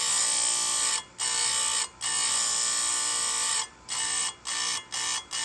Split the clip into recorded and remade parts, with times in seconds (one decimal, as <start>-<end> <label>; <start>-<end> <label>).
0.0-3.5 recorded; 3.5-4.2 remade; 4.2-5.4 recorded